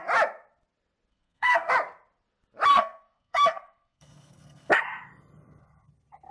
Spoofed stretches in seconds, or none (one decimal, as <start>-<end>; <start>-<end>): 1.1-1.7; 2.7-4.7